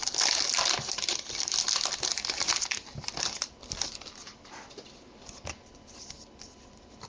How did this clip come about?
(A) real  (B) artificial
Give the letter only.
A